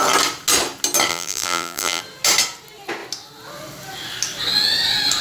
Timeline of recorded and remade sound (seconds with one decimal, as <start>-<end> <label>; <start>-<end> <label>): 0.0-1.1 recorded; 1.1-2.0 remade; 2.0-5.2 recorded